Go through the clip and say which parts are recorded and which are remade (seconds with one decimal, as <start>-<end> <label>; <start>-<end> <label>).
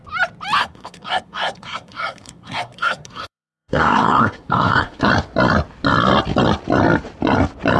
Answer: 0.0-0.6 recorded; 0.6-5.1 remade; 5.1-7.8 recorded